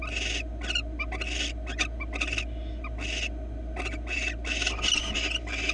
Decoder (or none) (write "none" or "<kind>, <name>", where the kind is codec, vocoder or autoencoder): none